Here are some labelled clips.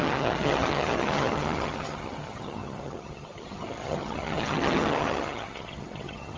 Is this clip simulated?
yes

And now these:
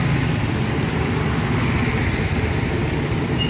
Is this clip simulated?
no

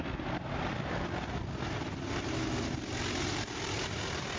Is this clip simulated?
no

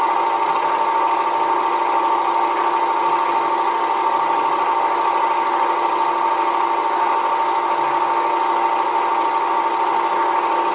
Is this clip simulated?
no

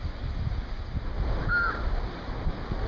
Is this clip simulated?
no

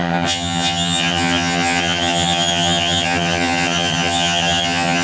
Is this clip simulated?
yes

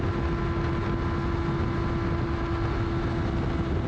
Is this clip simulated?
no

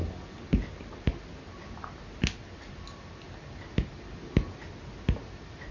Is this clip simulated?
no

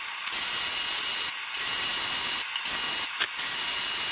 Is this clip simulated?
no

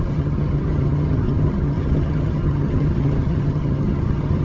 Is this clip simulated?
yes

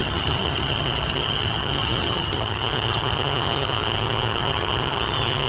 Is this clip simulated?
yes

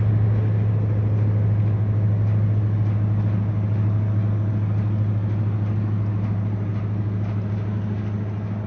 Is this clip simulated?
no